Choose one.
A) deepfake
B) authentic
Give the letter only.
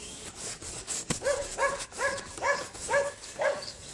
A